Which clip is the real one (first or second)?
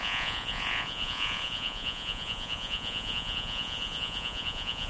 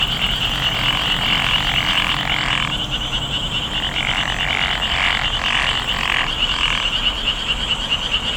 second